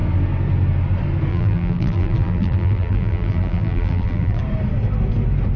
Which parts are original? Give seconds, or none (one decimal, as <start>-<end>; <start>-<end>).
0.0-1.3; 4.4-5.6